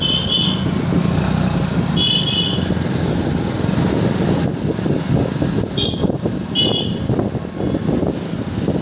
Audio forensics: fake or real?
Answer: real